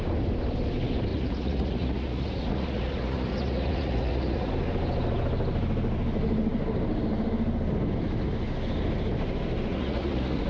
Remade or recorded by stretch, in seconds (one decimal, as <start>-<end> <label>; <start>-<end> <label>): 0.0-1.1 recorded; 1.1-4.5 remade; 4.5-9.7 recorded; 9.7-10.5 remade